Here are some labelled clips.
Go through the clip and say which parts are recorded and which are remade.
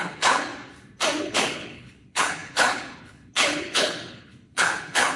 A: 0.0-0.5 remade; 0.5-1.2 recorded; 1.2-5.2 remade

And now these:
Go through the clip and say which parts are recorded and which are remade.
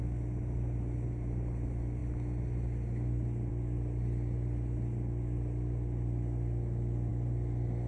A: 0.0-7.9 recorded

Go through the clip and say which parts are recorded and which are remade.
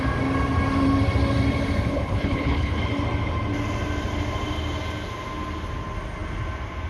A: 0.0-1.9 recorded; 1.9-2.8 remade; 2.8-6.9 recorded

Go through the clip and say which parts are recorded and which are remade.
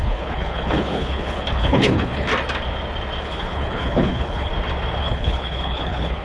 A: 0.0-2.3 remade; 2.3-3.2 recorded; 3.2-4.5 remade; 4.5-5.0 recorded; 5.0-6.2 remade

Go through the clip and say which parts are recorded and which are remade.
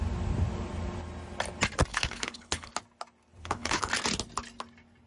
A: 0.0-1.9 recorded; 1.9-2.7 remade; 2.7-3.4 recorded; 3.4-3.9 remade; 3.9-5.1 recorded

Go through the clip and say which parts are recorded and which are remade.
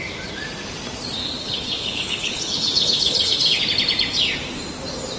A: 0.0-1.4 recorded; 1.4-3.6 remade; 3.6-5.2 recorded